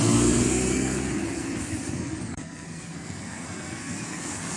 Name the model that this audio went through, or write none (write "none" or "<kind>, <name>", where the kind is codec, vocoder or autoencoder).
codec, SNAC